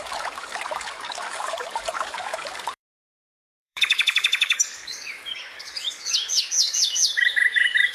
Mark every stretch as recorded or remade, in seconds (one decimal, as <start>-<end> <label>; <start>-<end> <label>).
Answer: 0.0-7.9 remade